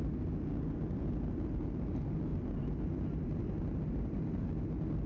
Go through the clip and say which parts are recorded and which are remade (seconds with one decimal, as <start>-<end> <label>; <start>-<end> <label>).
0.0-5.1 recorded

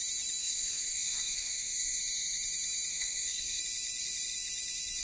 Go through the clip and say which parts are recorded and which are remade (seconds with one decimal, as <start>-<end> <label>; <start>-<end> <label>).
0.0-0.4 recorded; 0.4-2.0 remade; 2.0-2.9 recorded; 2.9-3.6 remade; 3.6-5.0 recorded

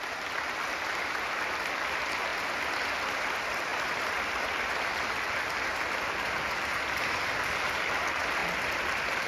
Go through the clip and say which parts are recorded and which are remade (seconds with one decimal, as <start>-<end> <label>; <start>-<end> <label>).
0.0-3.7 recorded; 3.7-4.6 remade; 4.6-8.4 recorded; 8.4-9.3 remade

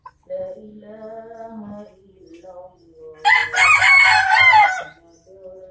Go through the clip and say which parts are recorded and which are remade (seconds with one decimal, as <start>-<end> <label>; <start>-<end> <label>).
0.0-5.7 recorded